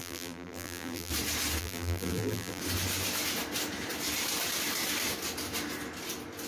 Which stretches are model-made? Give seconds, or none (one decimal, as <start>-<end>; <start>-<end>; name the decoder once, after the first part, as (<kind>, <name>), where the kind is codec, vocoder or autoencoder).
0.0-1.1 (vocoder, BigVGAN v2); 1.6-2.6